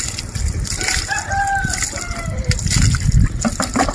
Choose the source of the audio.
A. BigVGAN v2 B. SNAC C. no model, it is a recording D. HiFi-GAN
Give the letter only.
C